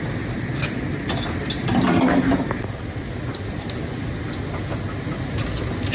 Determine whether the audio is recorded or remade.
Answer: recorded